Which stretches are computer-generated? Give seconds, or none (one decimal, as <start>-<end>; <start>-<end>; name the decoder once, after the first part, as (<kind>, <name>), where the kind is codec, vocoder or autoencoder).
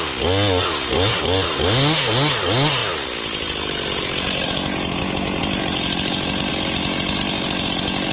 none